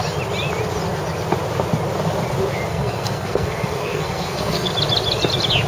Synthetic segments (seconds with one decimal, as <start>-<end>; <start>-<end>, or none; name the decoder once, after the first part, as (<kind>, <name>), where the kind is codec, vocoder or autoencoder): 2.7-4.7 (codec, SNAC)